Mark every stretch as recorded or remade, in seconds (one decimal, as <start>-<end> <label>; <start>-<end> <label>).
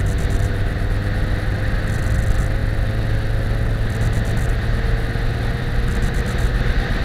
0.0-7.0 recorded